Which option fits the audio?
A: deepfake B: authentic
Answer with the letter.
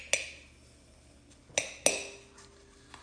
B